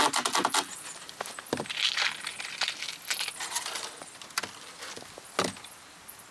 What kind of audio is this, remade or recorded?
recorded